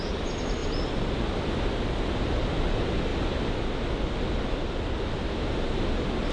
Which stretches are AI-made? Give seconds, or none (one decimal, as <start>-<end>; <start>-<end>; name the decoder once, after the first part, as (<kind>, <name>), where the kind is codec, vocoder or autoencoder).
none